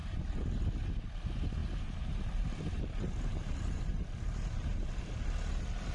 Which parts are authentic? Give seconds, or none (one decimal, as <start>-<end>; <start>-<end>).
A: 0.0-1.6; 4.9-5.9